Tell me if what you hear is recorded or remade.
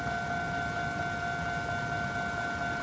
recorded